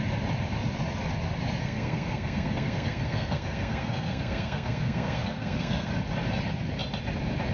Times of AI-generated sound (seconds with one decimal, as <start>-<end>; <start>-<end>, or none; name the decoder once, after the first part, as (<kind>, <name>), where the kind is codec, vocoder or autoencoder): 1.6-5.9 (codec, SNAC)